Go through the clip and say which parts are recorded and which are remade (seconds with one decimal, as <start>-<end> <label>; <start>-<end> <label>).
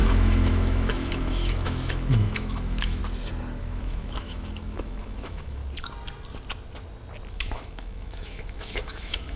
0.0-3.0 remade; 3.0-3.6 recorded; 3.6-5.6 remade; 5.6-7.3 recorded; 7.3-9.4 remade